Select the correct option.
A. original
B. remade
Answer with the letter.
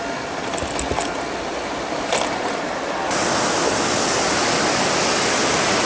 A